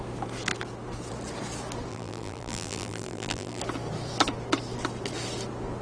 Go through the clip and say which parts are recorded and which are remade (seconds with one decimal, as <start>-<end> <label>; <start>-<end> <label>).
0.0-1.9 recorded; 1.9-3.6 remade; 3.6-5.8 recorded